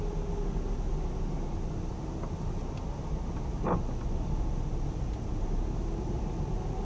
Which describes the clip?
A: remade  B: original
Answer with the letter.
B